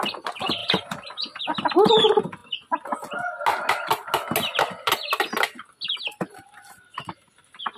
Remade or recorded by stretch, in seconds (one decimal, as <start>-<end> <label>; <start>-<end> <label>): 0.0-0.6 recorded; 0.6-1.4 remade; 1.4-7.8 recorded